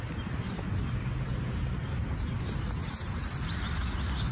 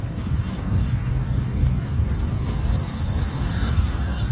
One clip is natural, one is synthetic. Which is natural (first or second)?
first